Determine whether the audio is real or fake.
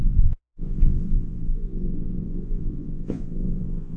fake